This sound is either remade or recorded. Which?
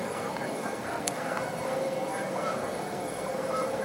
remade